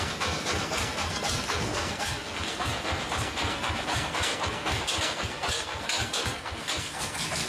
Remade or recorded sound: remade